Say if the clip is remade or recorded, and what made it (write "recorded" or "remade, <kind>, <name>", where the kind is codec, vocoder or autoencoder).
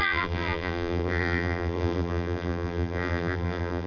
remade, vocoder, BigVGAN v2